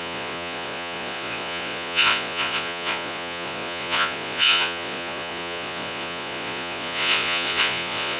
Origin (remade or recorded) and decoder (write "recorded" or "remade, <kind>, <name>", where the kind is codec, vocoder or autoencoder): remade, vocoder, Vocos